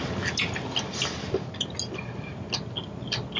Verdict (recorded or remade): recorded